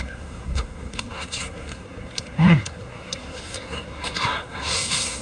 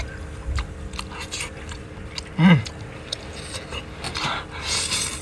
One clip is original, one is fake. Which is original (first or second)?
second